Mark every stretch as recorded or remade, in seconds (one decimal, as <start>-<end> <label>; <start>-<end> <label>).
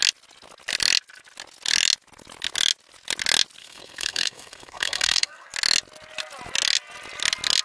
0.0-3.6 recorded; 3.6-5.5 remade; 5.5-7.6 recorded